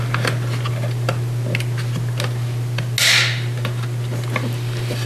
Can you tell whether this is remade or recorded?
recorded